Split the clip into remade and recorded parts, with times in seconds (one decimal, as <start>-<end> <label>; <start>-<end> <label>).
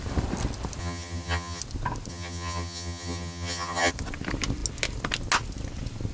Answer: 0.0-0.8 recorded; 0.8-1.6 remade; 1.6-2.1 recorded; 2.1-3.9 remade; 3.9-6.1 recorded